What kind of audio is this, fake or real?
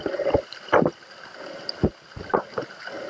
real